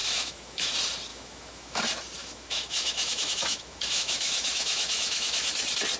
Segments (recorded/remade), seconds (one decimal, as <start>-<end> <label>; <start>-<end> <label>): 0.0-0.7 remade; 0.7-1.1 recorded; 1.1-1.8 remade; 1.8-2.2 recorded; 2.2-5.5 remade; 5.5-6.0 recorded